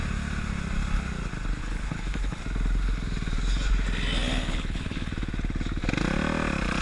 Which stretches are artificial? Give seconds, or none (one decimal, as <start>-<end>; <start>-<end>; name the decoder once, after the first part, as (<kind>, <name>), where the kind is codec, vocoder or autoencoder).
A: 1.6-2.4 (codec, HILCodec); 4.5-5.1